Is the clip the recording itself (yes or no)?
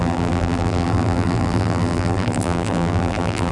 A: no